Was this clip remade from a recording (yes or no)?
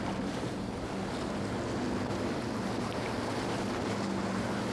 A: no